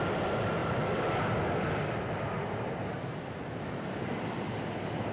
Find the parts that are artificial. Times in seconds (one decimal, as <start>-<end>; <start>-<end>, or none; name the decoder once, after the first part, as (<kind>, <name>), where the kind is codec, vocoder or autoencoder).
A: none